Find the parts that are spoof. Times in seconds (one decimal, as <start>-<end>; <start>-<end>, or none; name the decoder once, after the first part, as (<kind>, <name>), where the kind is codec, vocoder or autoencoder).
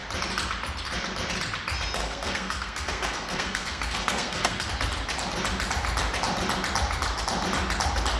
2.0-4.7 (codec, SNAC)